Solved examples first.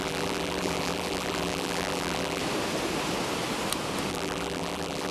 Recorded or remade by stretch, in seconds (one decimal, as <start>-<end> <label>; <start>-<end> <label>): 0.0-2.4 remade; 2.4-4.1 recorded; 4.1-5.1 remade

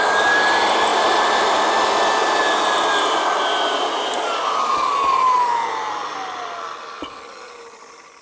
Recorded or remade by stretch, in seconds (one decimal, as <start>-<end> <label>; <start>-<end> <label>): 0.0-4.7 remade; 4.7-5.7 recorded; 5.7-8.2 remade

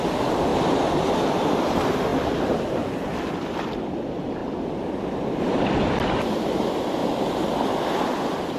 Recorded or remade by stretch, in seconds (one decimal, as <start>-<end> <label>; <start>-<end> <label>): 0.0-8.6 remade

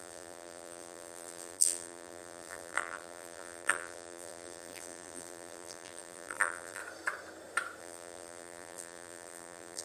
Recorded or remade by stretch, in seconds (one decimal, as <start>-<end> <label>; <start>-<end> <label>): 0.0-6.8 remade; 6.8-7.8 recorded; 7.8-9.8 remade